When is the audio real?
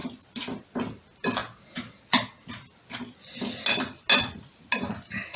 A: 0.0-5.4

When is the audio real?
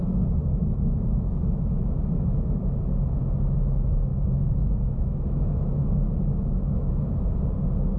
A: 0.0-0.4; 2.8-4.1; 7.3-8.0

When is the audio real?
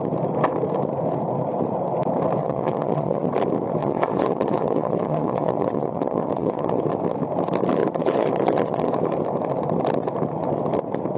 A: 0.0-2.4; 3.3-3.8; 6.8-7.8; 8.9-11.2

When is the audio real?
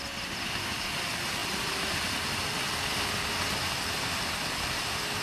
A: 0.0-1.4; 4.5-5.2